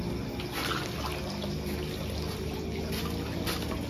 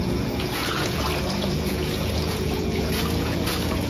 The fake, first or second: second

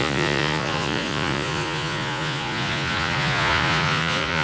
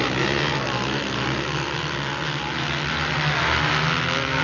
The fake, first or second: first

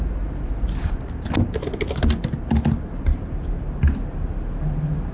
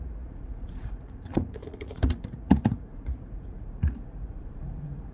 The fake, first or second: second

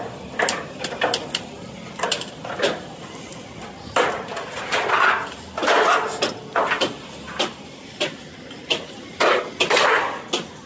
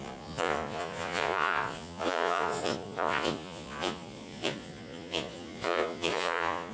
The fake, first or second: second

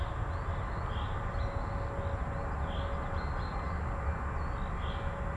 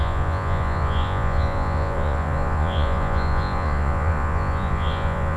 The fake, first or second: second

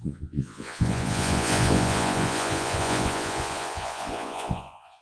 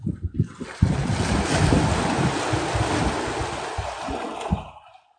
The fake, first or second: first